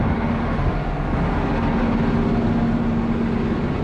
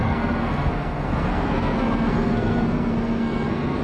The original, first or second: first